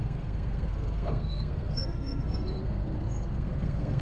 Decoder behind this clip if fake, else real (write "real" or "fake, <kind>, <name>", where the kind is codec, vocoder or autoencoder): fake, codec, SNAC